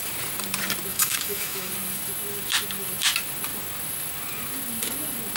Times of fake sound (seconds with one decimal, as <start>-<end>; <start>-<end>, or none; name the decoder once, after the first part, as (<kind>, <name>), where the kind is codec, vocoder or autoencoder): 0.9-1.7 (autoencoder, DAC-VAE)